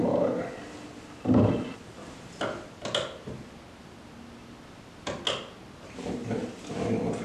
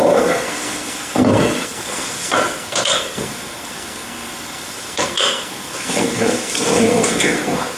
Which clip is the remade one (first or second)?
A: second